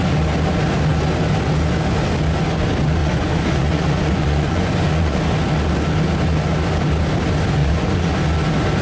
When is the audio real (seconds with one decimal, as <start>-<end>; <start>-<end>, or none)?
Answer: 0.0-3.0; 5.2-7.6; 8.1-8.8

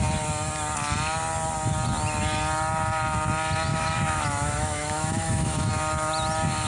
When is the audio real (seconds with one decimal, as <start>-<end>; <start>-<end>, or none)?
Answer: 0.0-3.7; 5.7-6.7

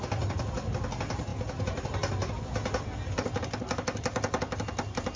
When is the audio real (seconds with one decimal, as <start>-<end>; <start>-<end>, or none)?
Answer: 1.3-3.1

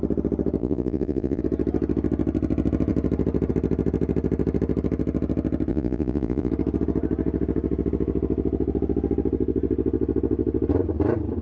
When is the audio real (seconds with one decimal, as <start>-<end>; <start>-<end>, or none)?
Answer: 0.0-0.6; 1.4-5.7; 6.5-11.4

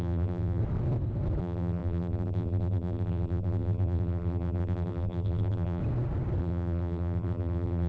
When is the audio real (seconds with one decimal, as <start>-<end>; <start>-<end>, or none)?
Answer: 0.6-1.4; 5.8-6.4

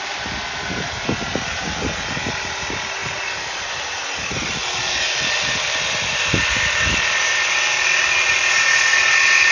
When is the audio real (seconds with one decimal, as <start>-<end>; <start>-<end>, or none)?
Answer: 0.0-9.5